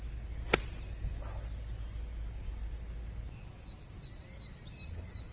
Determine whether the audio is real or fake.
real